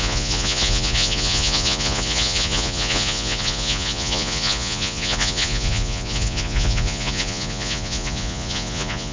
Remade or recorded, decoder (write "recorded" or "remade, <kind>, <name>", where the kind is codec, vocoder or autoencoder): remade, vocoder, Vocos